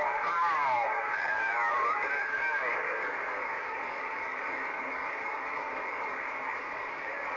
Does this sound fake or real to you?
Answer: fake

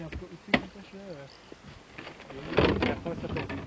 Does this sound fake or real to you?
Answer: real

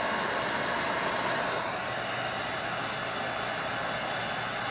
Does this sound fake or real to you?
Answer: real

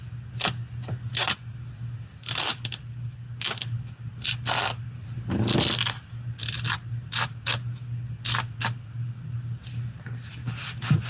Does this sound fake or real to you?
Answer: real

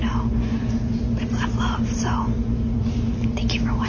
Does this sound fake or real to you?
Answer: real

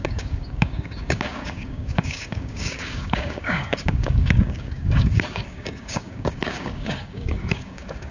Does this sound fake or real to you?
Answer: fake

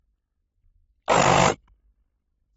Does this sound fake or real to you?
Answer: real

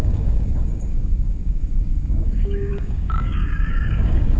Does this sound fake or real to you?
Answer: fake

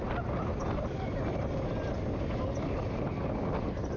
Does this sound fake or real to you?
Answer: real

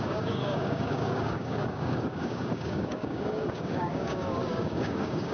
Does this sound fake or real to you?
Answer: fake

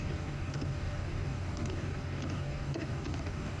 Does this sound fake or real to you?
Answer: fake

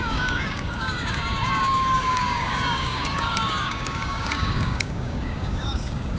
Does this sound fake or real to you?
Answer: fake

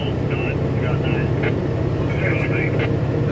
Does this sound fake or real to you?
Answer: real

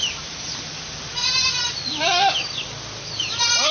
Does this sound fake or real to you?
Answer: real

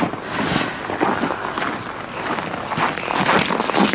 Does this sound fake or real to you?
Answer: real